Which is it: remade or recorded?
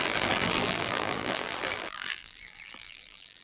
remade